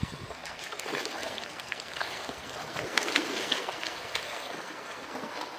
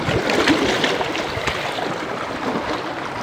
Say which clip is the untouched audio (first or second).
second